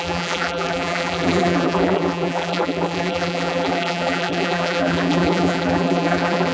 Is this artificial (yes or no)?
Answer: yes